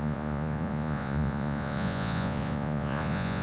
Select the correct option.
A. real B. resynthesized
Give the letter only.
B